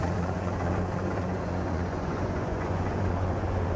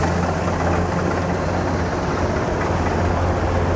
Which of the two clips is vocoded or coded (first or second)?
first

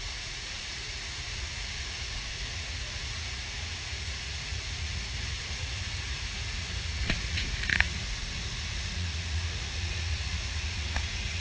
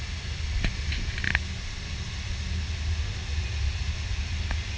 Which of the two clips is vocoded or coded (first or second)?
first